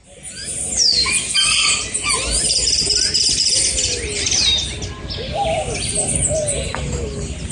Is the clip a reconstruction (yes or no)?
no